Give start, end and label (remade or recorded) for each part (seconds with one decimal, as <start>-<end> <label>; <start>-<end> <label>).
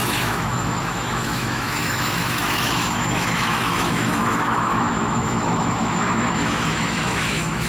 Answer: 0.0-7.7 remade